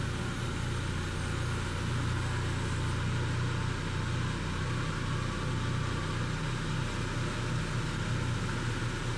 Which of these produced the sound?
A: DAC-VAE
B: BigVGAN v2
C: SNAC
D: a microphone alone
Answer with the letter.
D